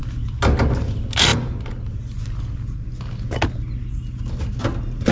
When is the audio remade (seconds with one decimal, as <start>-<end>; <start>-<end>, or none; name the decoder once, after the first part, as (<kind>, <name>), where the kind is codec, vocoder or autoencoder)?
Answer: none